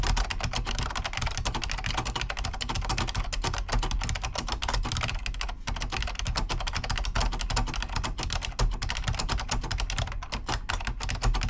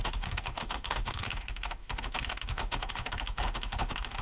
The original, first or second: first